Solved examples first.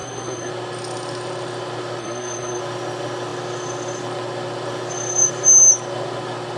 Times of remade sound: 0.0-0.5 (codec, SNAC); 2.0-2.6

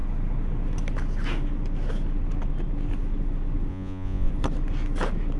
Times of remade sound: 3.7-4.3 (vocoder, Vocos)

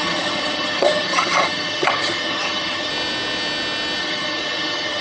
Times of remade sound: 0.0-2.9 (vocoder, HiFi-GAN); 4.0-5.0

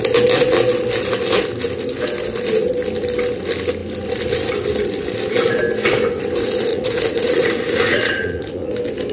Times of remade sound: 6.7-8.7 (vocoder, Vocos)

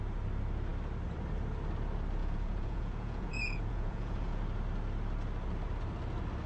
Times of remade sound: 2.2-4.4 (vocoder, Vocos)